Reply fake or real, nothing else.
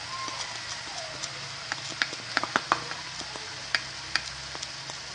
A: real